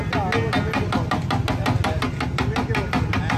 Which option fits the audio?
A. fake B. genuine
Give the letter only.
B